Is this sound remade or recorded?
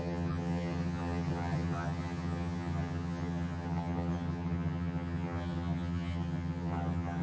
remade